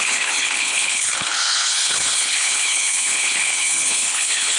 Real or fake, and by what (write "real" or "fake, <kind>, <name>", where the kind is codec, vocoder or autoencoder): fake, codec, HILCodec